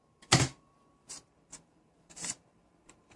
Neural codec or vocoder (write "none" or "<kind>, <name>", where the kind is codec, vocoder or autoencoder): vocoder, BigVGAN v2